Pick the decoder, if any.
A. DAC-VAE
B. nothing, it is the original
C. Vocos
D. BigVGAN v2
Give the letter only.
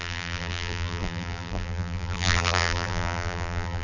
D